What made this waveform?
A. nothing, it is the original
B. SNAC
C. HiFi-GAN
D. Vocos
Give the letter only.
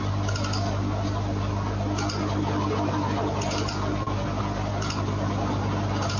A